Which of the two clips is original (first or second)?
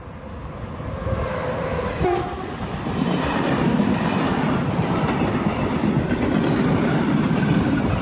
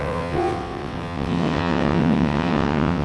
first